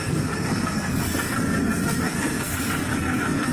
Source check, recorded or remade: remade